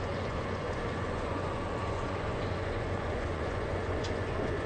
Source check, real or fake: fake